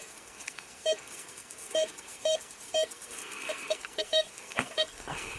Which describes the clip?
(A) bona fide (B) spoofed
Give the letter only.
B